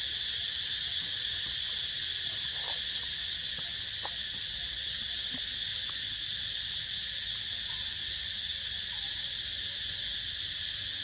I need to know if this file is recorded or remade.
recorded